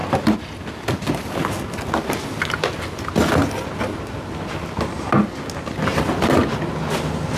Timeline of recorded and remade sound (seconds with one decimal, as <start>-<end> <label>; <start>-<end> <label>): 0.0-1.4 remade; 1.4-7.4 recorded